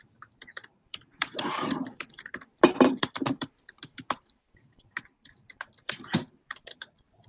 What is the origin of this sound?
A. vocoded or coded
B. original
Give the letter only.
A